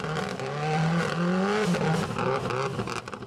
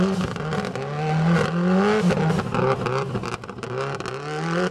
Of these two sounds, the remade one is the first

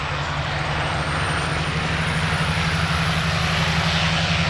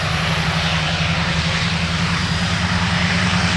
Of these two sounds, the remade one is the second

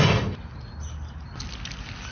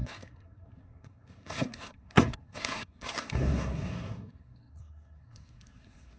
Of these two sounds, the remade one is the second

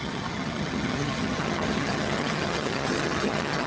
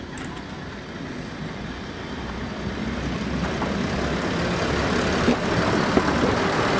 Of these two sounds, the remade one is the first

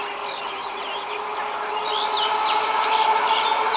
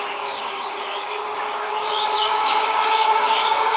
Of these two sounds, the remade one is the second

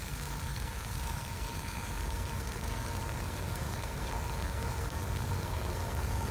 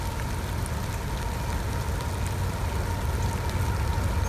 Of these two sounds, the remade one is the first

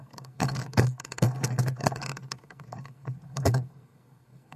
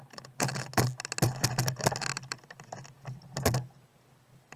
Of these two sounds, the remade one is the first